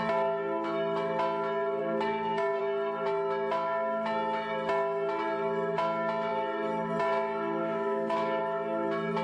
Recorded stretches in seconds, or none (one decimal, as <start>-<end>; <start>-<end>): 0.0-1.8; 2.6-7.6; 8.4-9.2